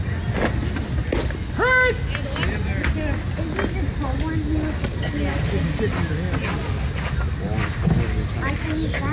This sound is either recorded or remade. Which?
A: recorded